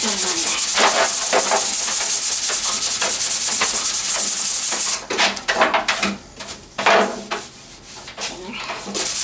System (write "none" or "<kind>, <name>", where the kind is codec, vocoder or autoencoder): none